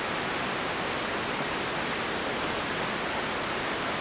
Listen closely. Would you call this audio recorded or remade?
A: recorded